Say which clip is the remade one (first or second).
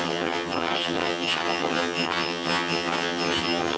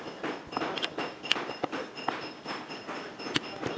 first